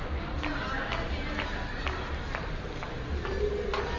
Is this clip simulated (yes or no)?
no